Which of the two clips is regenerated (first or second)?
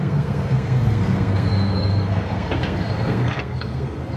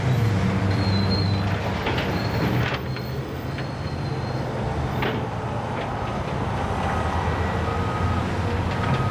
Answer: first